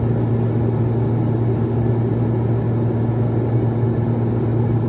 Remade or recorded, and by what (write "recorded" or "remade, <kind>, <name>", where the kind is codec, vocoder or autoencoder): recorded